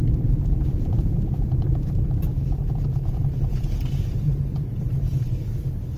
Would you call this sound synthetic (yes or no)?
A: yes